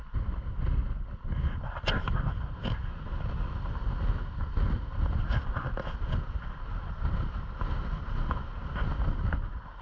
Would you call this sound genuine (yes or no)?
yes